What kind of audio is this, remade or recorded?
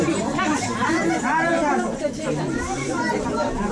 remade